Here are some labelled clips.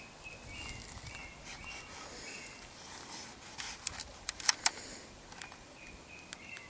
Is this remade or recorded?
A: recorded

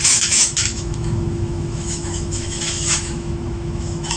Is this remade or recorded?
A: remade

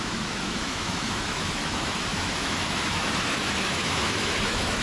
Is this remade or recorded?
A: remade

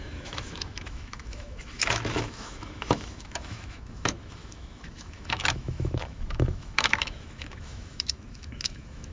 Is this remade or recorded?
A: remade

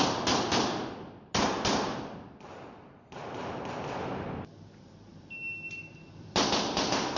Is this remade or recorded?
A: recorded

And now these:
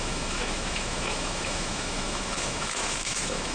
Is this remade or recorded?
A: remade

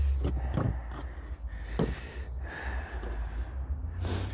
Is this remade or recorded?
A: recorded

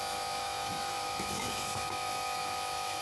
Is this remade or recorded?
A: remade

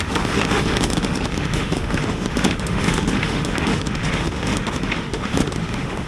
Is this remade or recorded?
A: remade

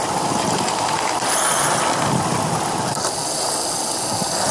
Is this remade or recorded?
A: recorded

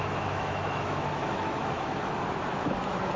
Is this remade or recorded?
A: remade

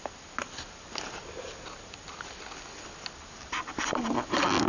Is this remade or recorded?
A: recorded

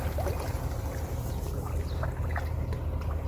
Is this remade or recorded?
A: recorded